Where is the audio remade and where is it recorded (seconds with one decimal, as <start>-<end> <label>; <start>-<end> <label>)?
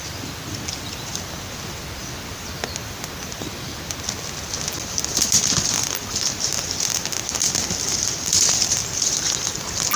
0.0-10.0 recorded